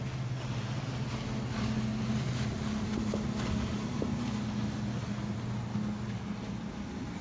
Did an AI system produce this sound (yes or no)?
no